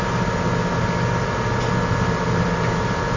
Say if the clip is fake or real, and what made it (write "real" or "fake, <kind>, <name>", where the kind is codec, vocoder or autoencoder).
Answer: real